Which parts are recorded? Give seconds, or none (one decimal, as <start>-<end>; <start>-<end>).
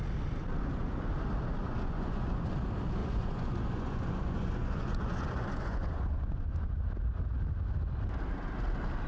0.0-1.6; 2.5-3.0; 6.8-9.1